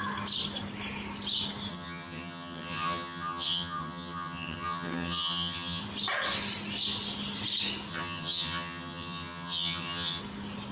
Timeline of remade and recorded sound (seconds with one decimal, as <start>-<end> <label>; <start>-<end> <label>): 0.0-1.7 recorded; 1.7-5.8 remade; 5.8-7.9 recorded; 7.9-10.2 remade; 10.2-10.7 recorded